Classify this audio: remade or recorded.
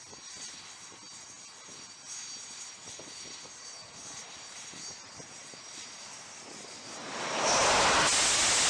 recorded